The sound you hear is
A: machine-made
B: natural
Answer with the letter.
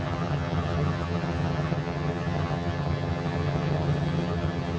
A